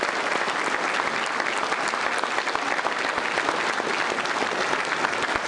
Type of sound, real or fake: real